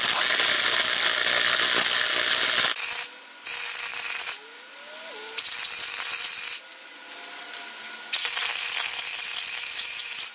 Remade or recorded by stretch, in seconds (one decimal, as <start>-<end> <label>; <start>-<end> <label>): 0.0-10.3 recorded